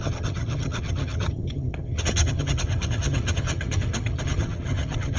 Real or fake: fake